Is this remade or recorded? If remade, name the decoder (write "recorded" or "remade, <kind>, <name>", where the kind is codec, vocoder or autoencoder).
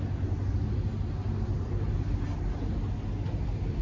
recorded